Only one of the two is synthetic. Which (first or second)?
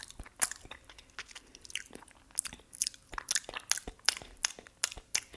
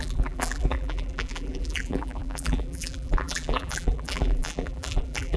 second